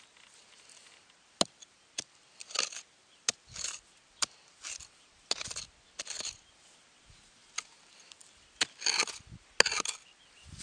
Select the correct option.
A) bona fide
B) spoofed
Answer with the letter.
A